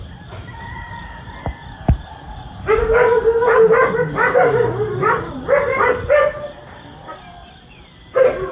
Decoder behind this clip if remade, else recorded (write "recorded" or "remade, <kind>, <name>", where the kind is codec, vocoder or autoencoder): recorded